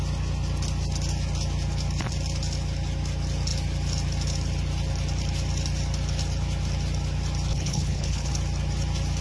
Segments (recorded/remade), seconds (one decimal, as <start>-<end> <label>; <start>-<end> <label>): 0.0-7.5 recorded; 7.5-8.3 remade; 8.3-9.2 recorded